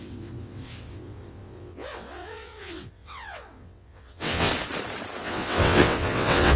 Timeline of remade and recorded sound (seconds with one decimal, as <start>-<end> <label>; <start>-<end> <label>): 0.0-4.5 remade; 4.5-5.2 recorded; 5.2-6.6 remade